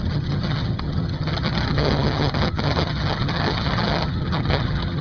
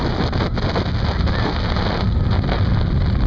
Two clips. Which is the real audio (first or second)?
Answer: second